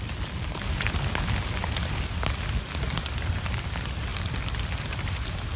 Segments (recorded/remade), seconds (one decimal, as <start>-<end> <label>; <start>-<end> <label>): 0.0-5.6 recorded